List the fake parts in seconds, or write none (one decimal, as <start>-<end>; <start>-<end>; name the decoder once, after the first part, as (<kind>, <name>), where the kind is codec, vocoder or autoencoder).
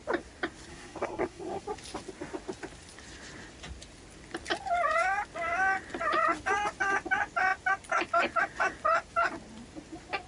0.7-1.6 (codec, SNAC)